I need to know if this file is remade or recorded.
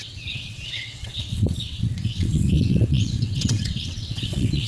remade